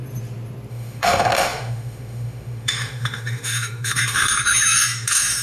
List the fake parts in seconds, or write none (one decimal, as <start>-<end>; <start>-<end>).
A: 0.7-5.4